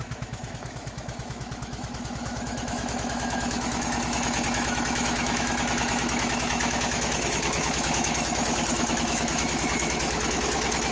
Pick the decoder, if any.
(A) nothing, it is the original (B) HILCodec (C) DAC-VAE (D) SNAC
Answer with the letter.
C